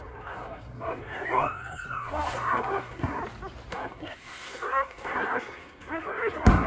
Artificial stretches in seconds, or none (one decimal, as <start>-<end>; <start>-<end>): 0.0-3.2; 3.7-6.7